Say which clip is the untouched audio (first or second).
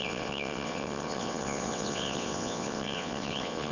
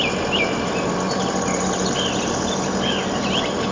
second